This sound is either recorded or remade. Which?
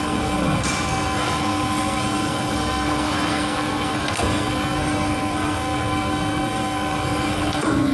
remade